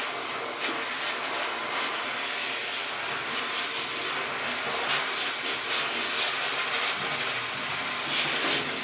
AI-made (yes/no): no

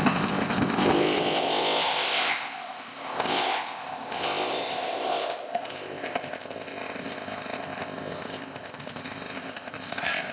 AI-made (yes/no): yes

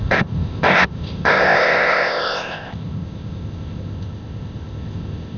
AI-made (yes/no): yes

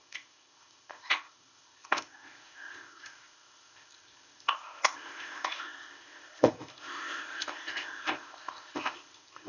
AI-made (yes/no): yes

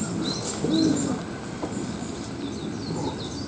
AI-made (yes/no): no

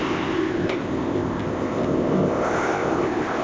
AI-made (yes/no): yes